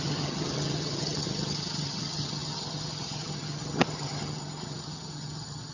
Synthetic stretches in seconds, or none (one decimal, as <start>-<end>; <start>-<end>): 0.0-5.7